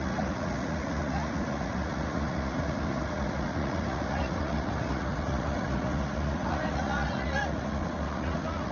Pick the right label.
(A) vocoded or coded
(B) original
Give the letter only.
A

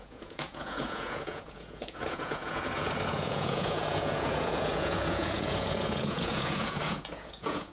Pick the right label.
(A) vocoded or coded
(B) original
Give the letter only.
A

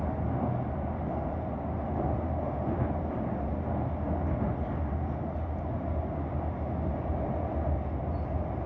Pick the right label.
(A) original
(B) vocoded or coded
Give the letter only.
A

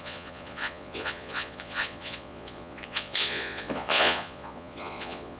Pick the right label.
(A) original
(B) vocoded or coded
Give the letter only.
B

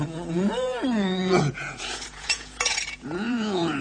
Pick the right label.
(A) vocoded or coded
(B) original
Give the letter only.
A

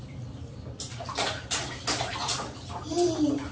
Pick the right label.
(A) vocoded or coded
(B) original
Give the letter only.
B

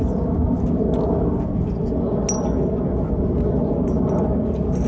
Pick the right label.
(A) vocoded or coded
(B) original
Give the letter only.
B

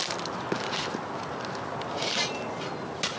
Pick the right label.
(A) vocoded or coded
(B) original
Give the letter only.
B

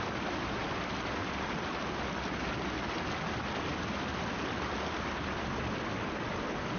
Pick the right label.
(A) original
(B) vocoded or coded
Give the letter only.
A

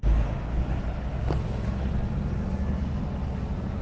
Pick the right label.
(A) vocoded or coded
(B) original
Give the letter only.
B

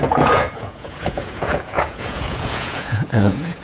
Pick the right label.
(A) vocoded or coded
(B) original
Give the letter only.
A